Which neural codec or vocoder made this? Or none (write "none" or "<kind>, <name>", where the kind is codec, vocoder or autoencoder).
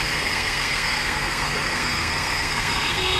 codec, SNAC